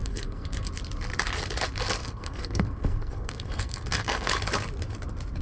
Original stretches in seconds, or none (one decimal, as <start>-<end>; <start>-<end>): 0.7-2.0; 4.3-5.4